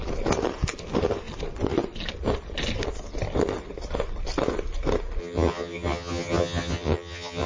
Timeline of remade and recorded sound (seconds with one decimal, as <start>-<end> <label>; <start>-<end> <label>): 0.0-5.2 recorded; 5.2-7.5 remade